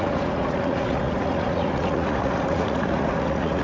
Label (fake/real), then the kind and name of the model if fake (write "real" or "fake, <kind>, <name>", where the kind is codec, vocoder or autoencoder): fake, vocoder, Vocos